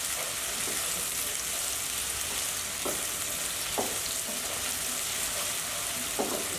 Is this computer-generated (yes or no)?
no